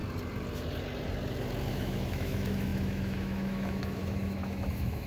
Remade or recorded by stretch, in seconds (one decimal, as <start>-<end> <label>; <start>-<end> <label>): 0.0-1.7 recorded; 1.7-5.1 remade